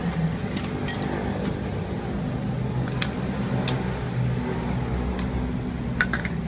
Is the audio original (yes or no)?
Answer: yes